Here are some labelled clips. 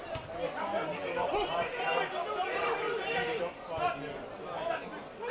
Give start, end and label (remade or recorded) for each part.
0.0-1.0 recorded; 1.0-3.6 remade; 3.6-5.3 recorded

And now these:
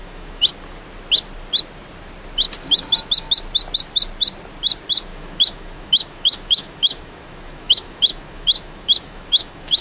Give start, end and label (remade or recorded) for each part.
0.0-0.5 remade; 0.5-5.1 recorded; 5.1-9.8 remade

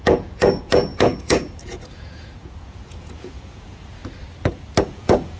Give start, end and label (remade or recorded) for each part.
0.0-4.0 remade; 4.0-4.8 recorded; 4.8-5.4 remade

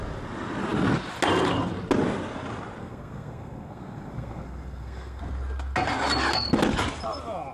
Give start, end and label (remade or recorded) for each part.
0.0-2.8 recorded; 2.8-5.2 remade; 5.2-7.5 recorded

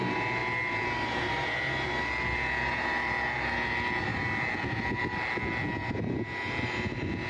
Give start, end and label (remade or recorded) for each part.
0.0-7.3 recorded

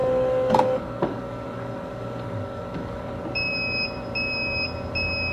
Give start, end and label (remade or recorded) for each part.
0.0-3.2 remade; 3.2-5.3 recorded

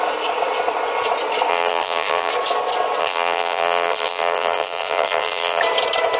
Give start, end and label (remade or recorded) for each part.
0.0-1.5 recorded; 1.5-2.3 remade; 2.3-3.0 recorded; 3.0-5.6 remade; 5.6-6.2 recorded

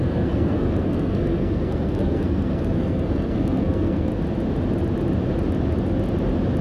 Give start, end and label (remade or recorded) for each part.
0.0-4.1 remade; 4.1-6.6 recorded